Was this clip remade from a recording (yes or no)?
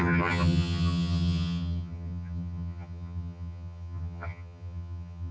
yes